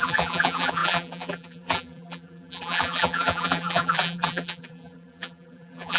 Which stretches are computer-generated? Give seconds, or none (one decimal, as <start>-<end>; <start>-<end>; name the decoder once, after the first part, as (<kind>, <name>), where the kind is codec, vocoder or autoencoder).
0.0-6.0 (vocoder, BigVGAN v2)